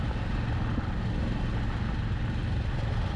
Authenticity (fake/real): real